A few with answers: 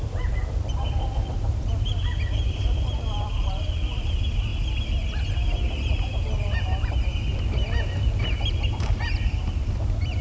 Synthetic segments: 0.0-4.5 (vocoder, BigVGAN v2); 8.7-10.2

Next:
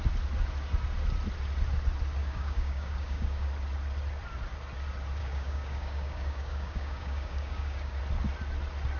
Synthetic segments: 2.2-3.5 (codec, DAC); 5.2-8.0